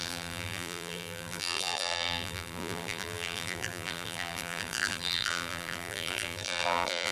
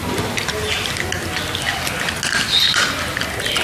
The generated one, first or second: first